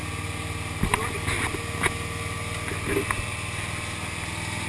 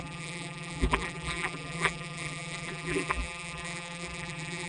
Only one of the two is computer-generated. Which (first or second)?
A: second